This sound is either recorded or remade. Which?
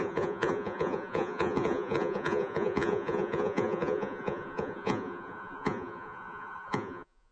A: remade